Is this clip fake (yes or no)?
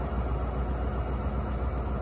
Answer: no